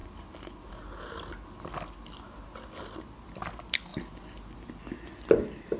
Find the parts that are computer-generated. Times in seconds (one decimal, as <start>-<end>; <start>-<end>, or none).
none